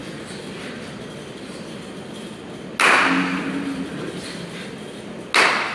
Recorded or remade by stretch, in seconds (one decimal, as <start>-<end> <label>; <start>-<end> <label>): 0.0-5.7 recorded